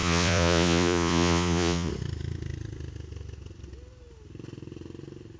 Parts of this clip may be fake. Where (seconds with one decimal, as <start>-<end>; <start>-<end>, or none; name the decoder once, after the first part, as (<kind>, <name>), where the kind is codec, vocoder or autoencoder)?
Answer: 0.0-1.9 (vocoder, Vocos)